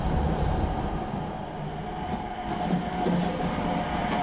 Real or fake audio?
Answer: real